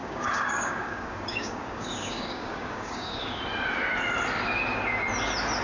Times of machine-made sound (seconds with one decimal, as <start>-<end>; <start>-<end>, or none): 0.0-3.4